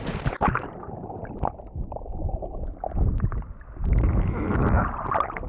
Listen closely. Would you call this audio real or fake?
real